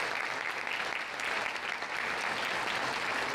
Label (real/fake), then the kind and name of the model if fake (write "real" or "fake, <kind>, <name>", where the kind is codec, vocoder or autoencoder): real